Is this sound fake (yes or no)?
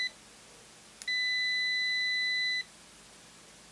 no